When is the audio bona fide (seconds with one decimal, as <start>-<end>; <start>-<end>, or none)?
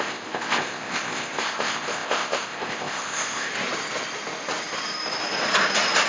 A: 3.5-6.1